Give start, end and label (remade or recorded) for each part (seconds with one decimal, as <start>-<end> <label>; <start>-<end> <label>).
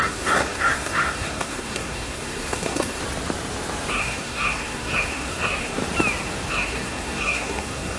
0.0-3.0 remade; 3.0-3.9 recorded; 3.9-5.8 remade; 5.8-6.5 recorded; 6.5-8.0 remade